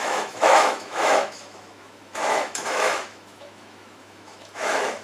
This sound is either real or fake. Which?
fake